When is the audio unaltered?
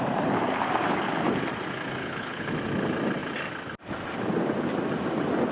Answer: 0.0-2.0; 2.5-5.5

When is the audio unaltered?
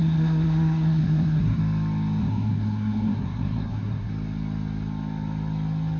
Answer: 1.6-2.2; 4.1-6.0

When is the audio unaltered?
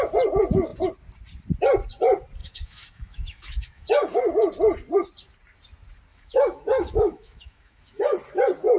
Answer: 0.0-2.4; 3.9-6.1; 8.0-8.8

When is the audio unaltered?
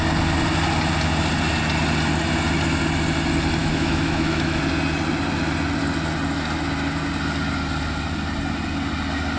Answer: 0.0-3.6; 4.6-9.4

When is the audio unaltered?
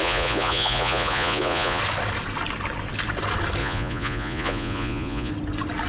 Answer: 1.8-3.6; 5.3-5.9